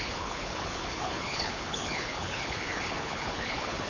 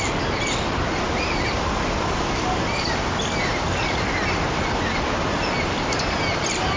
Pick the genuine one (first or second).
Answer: second